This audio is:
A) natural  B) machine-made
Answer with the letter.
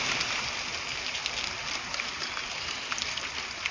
A